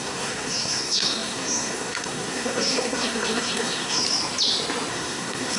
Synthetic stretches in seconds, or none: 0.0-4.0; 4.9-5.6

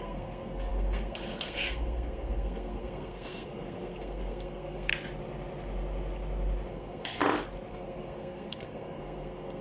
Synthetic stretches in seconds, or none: 0.0-4.9; 6.7-7.2; 7.7-9.6

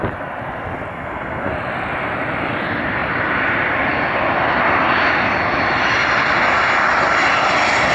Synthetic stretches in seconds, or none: 0.9-1.5

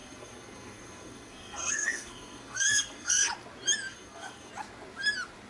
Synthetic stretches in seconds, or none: 0.0-3.3; 3.9-4.5